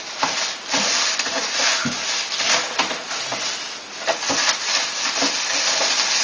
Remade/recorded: recorded